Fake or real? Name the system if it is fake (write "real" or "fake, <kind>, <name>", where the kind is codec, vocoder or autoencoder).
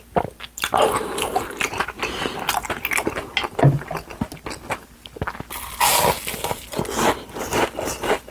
real